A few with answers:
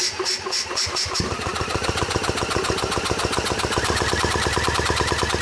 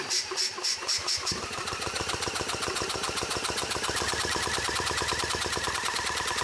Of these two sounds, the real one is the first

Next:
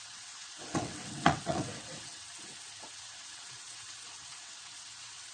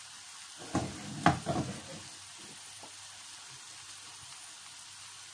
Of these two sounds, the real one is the second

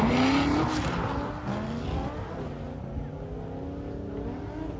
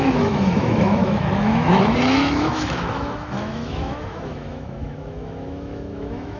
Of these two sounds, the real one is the first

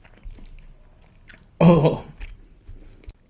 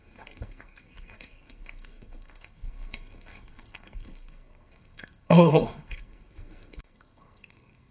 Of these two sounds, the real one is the first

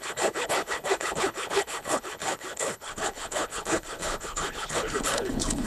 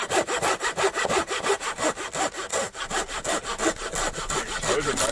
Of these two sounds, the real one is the second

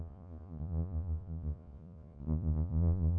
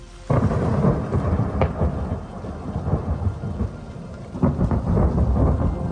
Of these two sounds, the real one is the second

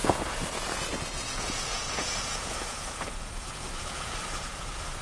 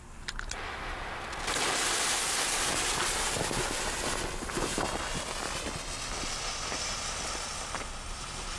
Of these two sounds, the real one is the second